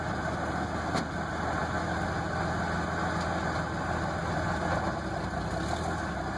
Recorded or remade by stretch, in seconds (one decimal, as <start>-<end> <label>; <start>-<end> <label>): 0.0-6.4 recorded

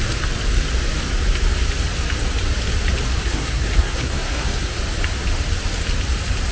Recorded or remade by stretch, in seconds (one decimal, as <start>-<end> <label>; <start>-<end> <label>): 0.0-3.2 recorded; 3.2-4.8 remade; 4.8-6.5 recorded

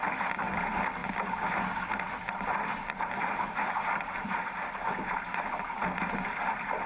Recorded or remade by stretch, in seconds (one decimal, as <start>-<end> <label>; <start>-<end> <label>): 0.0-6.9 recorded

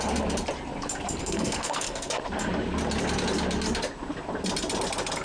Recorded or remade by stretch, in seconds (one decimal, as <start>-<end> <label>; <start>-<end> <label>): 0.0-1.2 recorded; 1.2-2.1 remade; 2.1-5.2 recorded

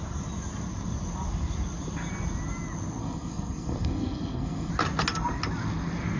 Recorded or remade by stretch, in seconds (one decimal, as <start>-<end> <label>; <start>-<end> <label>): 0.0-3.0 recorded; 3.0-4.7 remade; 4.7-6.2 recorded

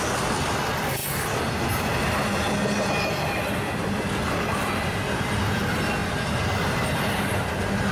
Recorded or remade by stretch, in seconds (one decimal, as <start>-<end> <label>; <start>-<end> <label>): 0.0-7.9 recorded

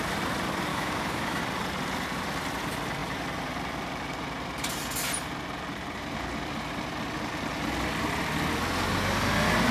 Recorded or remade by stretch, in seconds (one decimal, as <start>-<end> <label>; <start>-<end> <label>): 0.0-0.7 recorded; 0.7-1.4 remade; 1.4-9.7 recorded